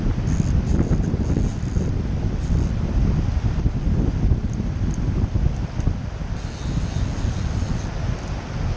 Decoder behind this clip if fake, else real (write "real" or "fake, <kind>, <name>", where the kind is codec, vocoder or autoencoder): real